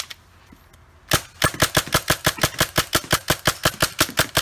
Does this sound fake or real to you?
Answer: real